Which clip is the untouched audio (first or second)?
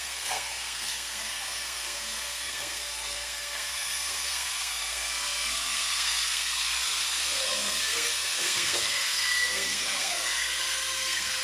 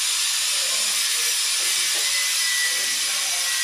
second